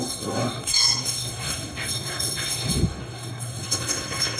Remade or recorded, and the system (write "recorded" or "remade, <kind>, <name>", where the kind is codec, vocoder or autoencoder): remade, codec, SNAC